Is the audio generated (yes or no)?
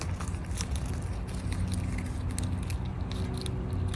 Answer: no